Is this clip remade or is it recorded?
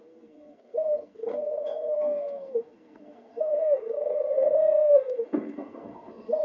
remade